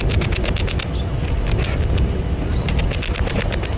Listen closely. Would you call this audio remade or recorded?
recorded